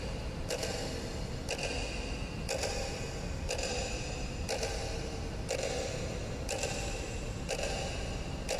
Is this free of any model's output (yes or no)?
yes